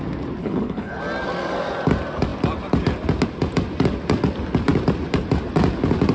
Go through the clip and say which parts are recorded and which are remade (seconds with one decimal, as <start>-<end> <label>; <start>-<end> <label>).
0.0-0.4 recorded; 0.4-1.0 remade; 1.0-6.1 recorded